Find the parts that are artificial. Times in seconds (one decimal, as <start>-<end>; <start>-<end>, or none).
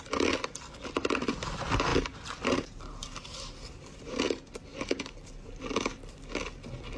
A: 1.9-4.2